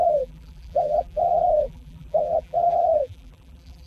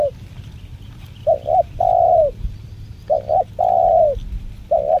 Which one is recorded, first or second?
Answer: second